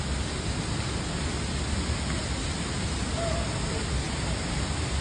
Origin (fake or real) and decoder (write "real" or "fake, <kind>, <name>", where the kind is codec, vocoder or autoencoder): real